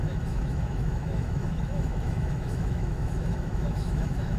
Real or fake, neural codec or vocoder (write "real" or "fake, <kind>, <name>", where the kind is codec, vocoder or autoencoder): fake, autoencoder, DAC-VAE